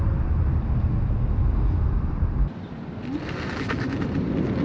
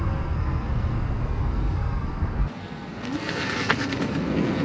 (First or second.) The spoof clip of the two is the second